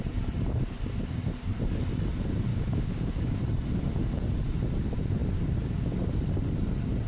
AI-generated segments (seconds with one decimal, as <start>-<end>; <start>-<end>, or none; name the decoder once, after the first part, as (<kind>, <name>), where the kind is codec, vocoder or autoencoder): 2.5-3.4 (codec, DAC)